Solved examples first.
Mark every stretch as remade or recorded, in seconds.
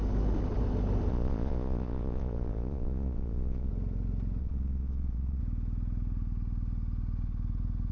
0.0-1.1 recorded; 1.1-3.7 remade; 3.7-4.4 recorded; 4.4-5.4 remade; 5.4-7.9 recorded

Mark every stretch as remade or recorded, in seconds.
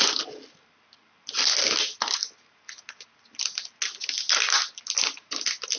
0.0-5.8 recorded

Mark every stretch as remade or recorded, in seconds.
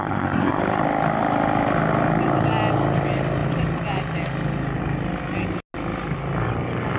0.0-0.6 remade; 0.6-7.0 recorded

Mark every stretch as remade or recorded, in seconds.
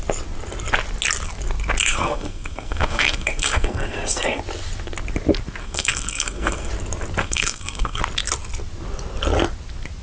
0.0-1.8 recorded; 1.8-4.4 remade; 4.4-5.6 recorded; 5.6-6.7 remade; 6.7-7.2 recorded; 7.2-8.0 remade; 8.0-10.0 recorded